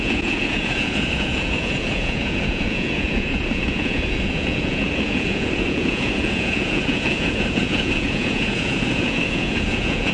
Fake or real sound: fake